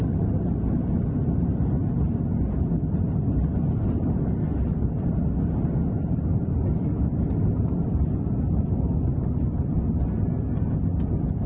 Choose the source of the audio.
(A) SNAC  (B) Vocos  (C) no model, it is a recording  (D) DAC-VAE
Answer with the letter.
C